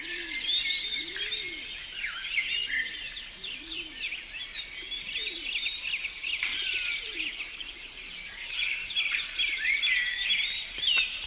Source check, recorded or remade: remade